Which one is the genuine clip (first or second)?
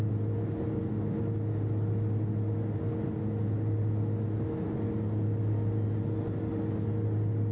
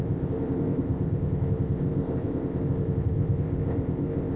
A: first